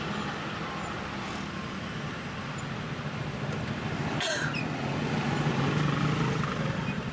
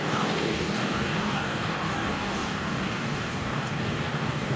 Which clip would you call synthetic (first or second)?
second